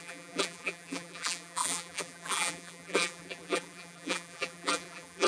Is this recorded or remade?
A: remade